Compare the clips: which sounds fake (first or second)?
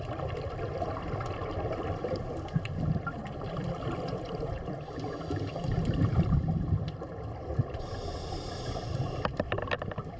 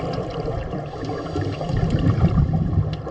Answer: first